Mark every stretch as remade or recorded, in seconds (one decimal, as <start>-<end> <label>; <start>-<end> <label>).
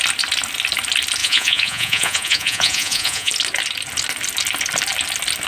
0.0-1.2 recorded; 1.2-3.3 remade; 3.3-5.5 recorded